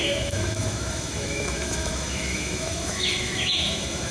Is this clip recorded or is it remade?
remade